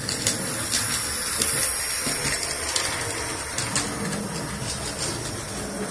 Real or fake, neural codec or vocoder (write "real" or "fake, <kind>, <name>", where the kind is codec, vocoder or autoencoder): real